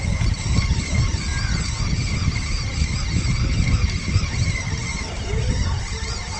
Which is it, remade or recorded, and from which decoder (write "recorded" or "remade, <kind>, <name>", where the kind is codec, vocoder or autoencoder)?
recorded